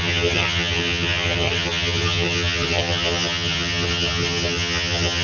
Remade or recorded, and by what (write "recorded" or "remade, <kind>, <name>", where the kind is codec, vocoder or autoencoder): remade, vocoder, HiFi-GAN